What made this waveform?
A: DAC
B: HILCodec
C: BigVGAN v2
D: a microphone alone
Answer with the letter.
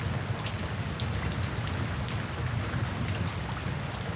D